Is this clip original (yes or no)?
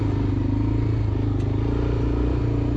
yes